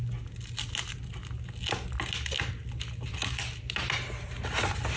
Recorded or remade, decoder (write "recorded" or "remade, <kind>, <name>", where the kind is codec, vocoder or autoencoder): recorded